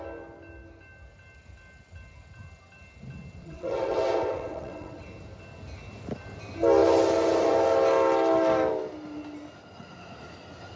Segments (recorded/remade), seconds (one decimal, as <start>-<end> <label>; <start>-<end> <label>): 0.0-3.4 recorded; 3.4-5.0 remade; 5.0-10.8 recorded